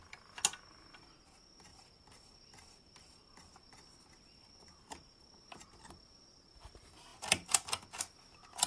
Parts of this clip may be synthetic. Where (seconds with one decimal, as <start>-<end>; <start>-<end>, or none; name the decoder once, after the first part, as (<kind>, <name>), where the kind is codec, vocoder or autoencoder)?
none